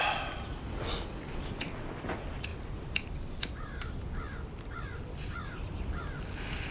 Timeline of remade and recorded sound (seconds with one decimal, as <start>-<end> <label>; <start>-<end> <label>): 0.0-6.7 recorded